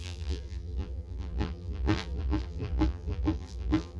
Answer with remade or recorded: remade